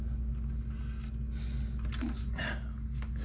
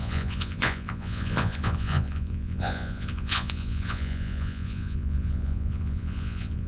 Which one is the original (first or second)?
first